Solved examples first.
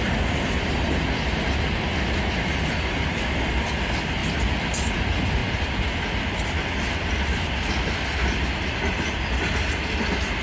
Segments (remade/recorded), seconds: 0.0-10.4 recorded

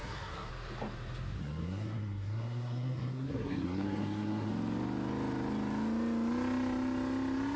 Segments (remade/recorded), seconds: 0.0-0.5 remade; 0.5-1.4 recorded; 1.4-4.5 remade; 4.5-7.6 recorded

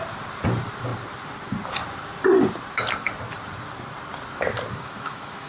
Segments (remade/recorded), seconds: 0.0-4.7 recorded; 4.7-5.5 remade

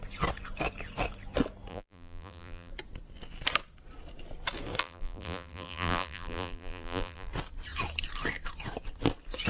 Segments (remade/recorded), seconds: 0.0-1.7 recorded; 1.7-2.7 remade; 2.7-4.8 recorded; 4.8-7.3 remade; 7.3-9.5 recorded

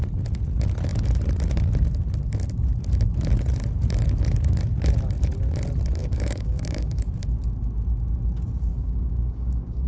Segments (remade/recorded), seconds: 0.0-6.0 recorded; 6.0-7.1 remade; 7.1-8.7 recorded; 8.7-9.9 remade

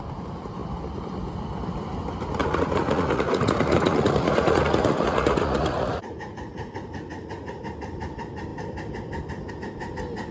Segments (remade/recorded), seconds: 0.0-2.4 recorded; 2.4-7.6 remade; 7.6-10.3 recorded